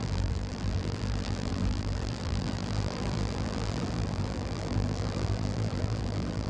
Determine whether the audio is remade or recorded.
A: remade